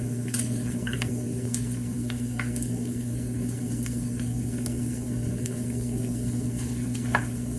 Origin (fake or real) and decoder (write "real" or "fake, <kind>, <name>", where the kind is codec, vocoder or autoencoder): fake, codec, SNAC